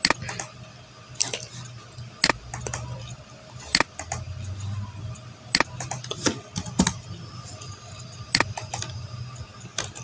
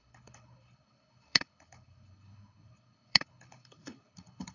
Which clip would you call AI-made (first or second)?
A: second